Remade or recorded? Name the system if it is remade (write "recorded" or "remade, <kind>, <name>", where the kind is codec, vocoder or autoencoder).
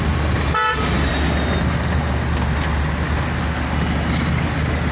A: recorded